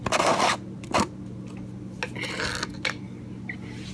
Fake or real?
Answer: real